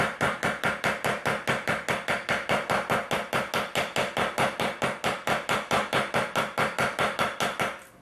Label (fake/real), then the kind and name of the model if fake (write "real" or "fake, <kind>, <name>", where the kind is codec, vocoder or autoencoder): real